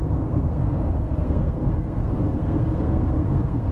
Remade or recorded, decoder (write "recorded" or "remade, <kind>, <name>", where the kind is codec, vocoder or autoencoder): remade, codec, SNAC